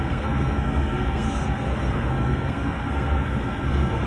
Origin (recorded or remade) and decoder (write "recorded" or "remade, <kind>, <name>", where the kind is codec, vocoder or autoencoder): remade, codec, SNAC